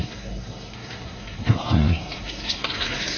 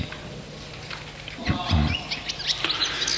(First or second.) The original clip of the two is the second